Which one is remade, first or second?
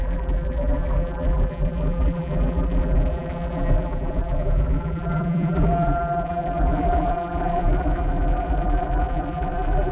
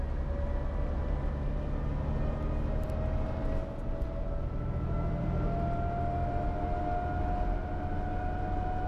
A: first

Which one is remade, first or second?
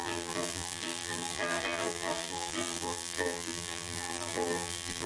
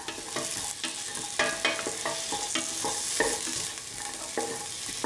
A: first